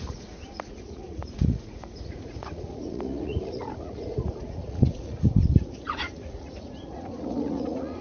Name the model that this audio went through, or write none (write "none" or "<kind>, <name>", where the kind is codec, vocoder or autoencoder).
vocoder, Vocos